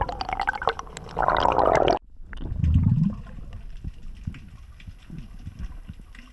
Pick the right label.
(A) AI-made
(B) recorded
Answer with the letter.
B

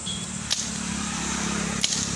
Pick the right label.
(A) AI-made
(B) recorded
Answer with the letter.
A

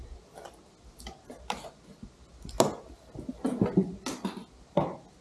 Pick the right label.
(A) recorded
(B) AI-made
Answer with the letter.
A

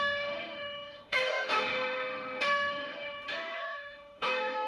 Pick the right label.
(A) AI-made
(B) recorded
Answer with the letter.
A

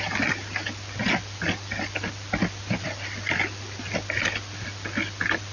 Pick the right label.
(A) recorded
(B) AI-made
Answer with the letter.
A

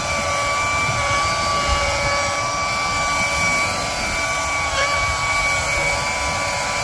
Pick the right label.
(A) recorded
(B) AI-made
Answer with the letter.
A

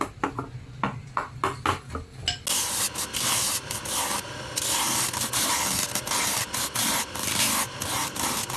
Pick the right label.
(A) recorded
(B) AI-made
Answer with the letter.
A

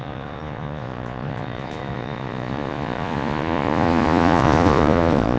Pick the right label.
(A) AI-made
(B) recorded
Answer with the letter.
A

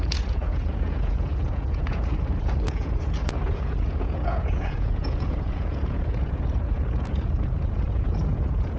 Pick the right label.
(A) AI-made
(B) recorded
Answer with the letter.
A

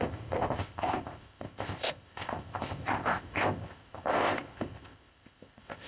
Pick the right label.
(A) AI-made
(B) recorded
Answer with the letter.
A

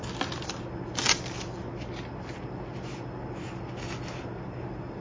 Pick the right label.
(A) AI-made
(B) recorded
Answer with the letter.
B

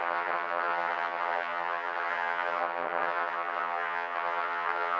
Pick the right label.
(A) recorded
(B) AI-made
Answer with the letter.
B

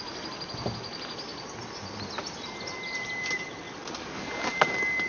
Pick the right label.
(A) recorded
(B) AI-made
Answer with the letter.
A